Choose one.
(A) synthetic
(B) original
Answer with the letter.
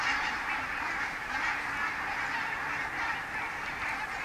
B